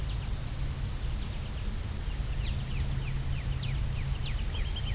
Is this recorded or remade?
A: recorded